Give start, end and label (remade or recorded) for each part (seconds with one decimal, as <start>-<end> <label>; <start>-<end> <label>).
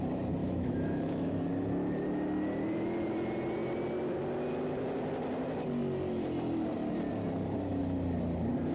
0.0-0.4 recorded; 0.4-1.4 remade; 1.4-8.7 recorded